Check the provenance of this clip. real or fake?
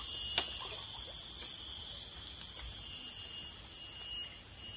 real